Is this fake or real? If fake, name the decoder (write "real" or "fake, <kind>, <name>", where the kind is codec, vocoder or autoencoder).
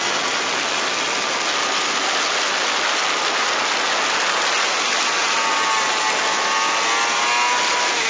real